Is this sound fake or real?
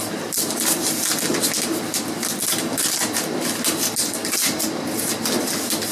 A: real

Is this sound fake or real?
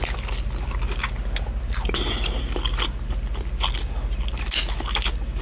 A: real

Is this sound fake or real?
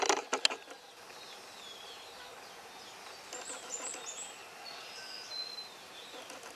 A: real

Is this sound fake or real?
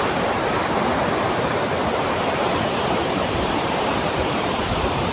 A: fake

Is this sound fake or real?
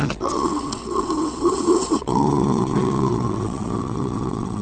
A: fake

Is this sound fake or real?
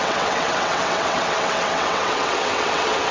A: fake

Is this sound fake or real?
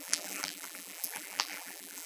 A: fake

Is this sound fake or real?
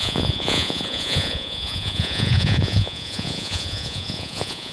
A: fake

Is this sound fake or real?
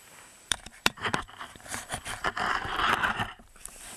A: fake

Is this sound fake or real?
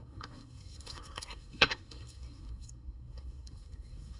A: fake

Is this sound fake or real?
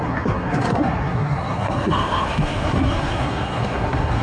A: fake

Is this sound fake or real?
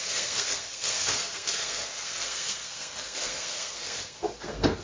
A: fake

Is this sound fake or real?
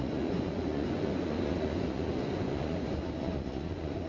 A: fake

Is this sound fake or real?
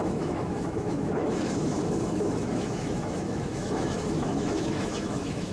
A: fake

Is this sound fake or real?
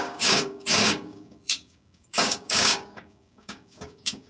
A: fake